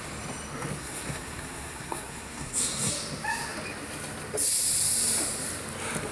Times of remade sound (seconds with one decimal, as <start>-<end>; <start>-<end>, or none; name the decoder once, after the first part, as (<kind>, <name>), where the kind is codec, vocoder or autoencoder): 0.8-2.9 (codec, SNAC)